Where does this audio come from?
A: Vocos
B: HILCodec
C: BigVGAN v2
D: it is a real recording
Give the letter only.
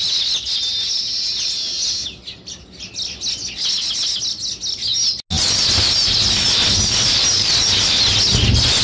D